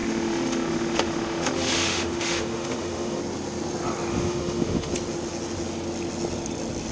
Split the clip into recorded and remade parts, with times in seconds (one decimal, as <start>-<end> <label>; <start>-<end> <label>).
0.0-3.2 remade; 3.2-4.1 recorded; 4.1-4.9 remade; 4.9-6.9 recorded